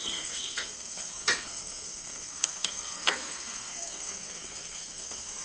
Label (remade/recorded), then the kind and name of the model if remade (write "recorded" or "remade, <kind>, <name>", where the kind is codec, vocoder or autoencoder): remade, codec, SNAC